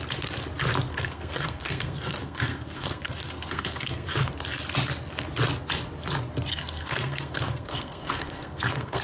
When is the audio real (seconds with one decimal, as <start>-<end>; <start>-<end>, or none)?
0.0-0.9; 4.3-6.5